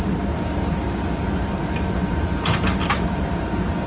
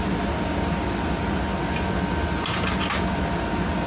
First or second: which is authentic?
second